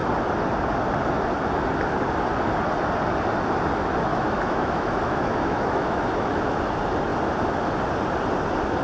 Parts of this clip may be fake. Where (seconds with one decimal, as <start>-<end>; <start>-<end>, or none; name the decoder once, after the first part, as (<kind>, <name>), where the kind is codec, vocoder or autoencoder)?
4.1-6.6 (autoencoder, DAC-VAE)